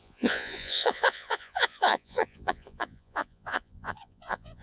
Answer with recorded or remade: remade